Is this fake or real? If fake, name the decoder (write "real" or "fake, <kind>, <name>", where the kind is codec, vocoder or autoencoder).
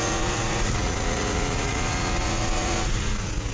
fake, vocoder, Vocos